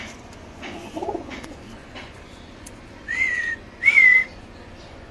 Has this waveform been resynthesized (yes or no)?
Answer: yes